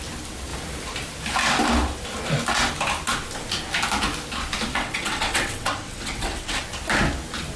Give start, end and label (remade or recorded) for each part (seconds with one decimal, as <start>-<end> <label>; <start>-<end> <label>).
0.0-4.7 recorded; 4.7-6.6 remade; 6.6-7.6 recorded

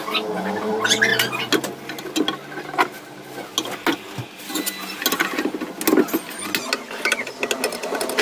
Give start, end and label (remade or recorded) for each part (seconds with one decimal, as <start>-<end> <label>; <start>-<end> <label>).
0.0-8.2 recorded

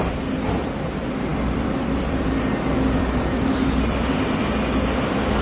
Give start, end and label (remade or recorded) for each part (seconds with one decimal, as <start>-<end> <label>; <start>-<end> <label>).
0.0-1.3 recorded; 1.3-4.4 remade; 4.4-5.4 recorded

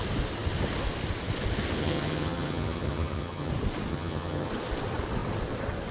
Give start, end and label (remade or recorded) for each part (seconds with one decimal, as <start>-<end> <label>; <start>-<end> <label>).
0.0-1.8 recorded; 1.8-3.5 remade; 3.5-3.9 recorded; 3.9-4.5 remade; 4.5-5.9 recorded

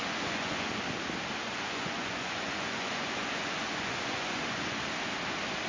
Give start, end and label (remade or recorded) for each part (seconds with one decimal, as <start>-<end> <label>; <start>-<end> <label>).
0.0-0.7 remade; 0.7-1.4 recorded; 1.4-4.8 remade; 4.8-5.7 recorded

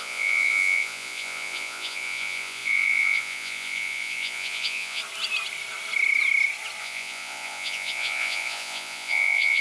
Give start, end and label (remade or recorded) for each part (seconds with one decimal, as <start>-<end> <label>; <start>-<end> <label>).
0.0-5.0 remade; 5.0-6.8 recorded; 6.8-9.6 remade

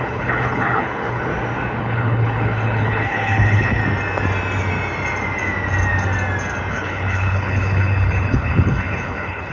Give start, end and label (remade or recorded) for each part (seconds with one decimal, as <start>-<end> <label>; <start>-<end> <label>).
0.0-1.3 remade; 1.3-1.8 recorded; 1.8-3.8 remade; 3.8-6.7 recorded; 6.7-9.5 remade

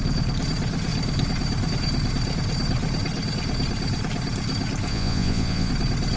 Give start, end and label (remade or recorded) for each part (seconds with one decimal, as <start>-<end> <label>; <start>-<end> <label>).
0.0-4.9 recorded; 4.9-5.7 remade; 5.7-6.2 recorded